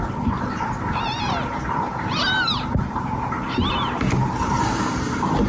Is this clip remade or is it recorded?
recorded